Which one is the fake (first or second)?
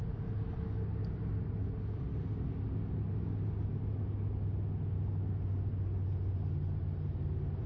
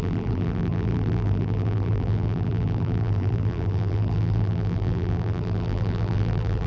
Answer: second